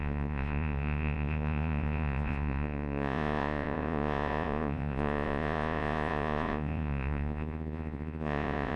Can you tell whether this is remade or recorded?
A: remade